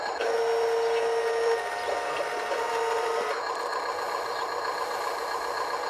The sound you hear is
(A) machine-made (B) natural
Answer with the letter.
B